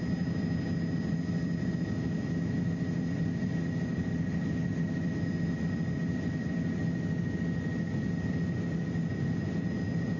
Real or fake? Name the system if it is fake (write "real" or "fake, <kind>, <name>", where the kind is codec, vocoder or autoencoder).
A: real